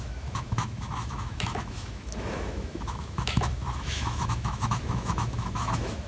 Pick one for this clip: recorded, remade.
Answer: remade